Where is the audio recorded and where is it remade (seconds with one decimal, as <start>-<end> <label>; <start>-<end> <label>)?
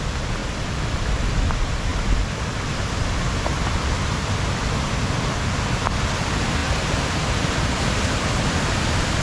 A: 0.0-0.4 recorded; 0.4-1.2 remade; 1.2-1.9 recorded; 1.9-3.4 remade; 3.4-6.6 recorded; 6.6-9.2 remade